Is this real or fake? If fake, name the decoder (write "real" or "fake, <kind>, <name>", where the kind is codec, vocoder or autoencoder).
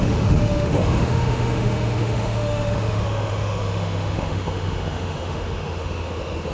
fake, autoencoder, DAC-VAE